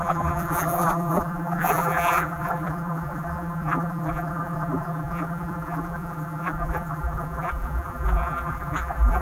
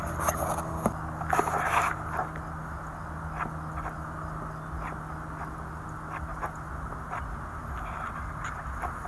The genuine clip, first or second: second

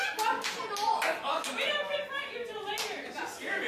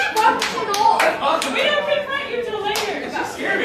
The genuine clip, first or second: first